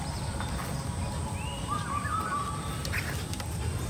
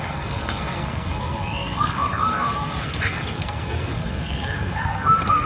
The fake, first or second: second